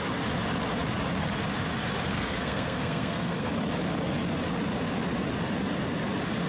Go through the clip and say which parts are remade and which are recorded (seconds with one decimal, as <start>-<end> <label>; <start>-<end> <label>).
0.0-2.1 recorded; 2.1-3.5 remade; 3.5-6.5 recorded